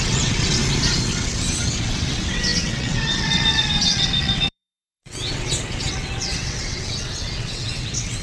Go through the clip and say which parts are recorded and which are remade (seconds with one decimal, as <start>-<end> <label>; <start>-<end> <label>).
0.0-0.6 remade; 0.6-1.1 recorded; 1.1-8.2 remade